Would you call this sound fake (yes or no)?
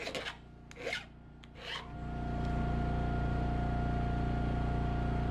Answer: no